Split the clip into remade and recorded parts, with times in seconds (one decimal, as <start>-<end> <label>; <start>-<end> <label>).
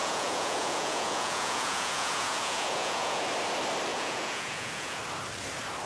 0.0-3.2 remade; 3.2-3.9 recorded; 3.9-5.0 remade; 5.0-5.9 recorded